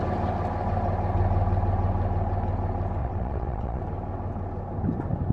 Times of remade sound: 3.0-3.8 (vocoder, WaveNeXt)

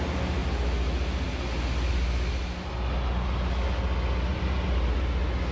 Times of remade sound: 4.3-5.0 (vocoder, BigVGAN v2)

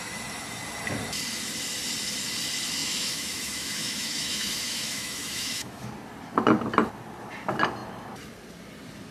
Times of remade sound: 2.8-5.9 (autoencoder, DAC-VAE)

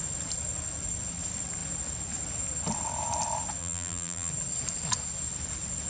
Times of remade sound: 3.6-4.3 (vocoder, BigVGAN v2)

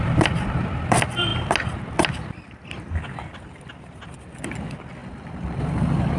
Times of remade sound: 5.0-6.2 (vocoder, BigVGAN v2)

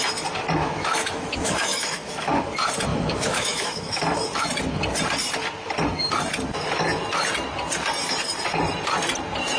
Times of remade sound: 0.6-2.4 (autoencoder, DAC-VAE); 2.9-4.0

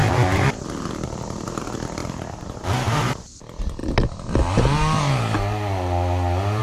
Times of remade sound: 0.0-0.9 (vocoder, BigVGAN v2); 2.0-3.1